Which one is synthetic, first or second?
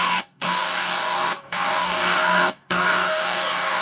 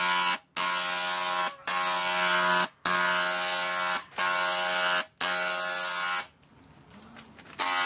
first